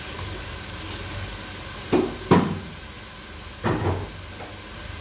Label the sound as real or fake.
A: real